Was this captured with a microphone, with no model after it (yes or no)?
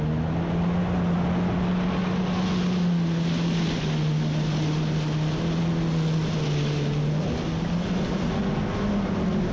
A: yes